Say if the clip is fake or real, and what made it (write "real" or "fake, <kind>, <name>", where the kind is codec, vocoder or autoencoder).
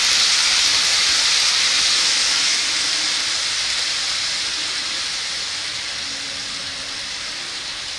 real